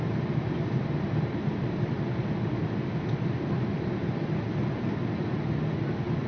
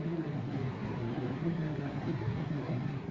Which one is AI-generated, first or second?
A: second